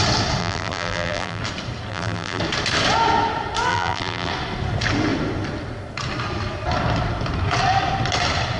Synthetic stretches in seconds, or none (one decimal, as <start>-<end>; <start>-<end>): 0.4-1.4; 1.9-2.4; 3.7-4.3